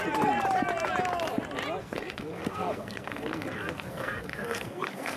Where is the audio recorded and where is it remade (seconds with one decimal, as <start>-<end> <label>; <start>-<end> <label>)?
0.0-1.8 recorded; 1.8-5.2 remade